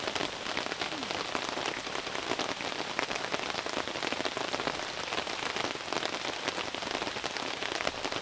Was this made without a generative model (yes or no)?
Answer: yes